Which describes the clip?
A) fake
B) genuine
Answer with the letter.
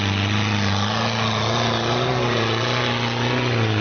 B